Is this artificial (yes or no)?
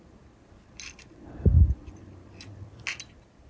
no